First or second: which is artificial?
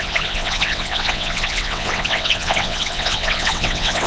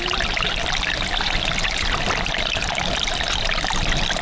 first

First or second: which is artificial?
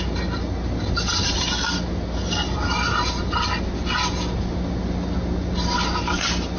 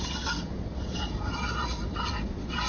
second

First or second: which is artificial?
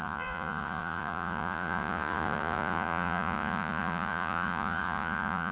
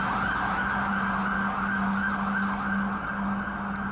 first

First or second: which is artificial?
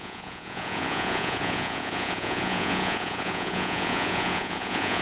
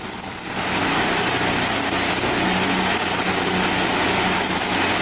first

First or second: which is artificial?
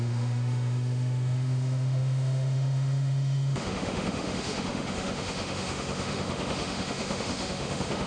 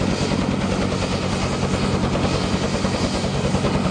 first